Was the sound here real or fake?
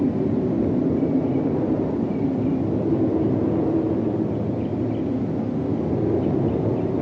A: real